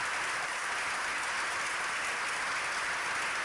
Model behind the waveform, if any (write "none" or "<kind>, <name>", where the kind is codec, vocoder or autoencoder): none